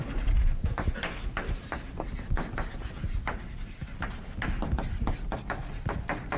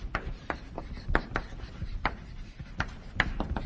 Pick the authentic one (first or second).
first